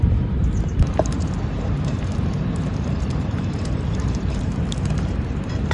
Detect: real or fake fake